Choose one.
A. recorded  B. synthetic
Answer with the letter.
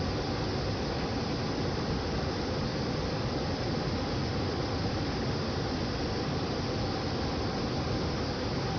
A